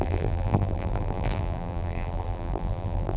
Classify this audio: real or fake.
fake